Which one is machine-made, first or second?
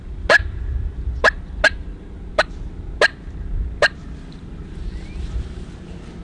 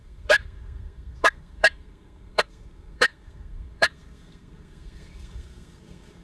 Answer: second